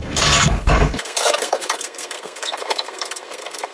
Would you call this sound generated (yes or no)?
yes